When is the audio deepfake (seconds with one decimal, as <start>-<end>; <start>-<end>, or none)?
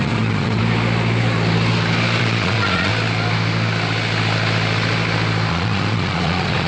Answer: 0.0-0.6; 2.2-2.9; 5.5-6.7